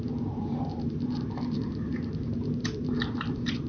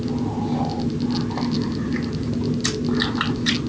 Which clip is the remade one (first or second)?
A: first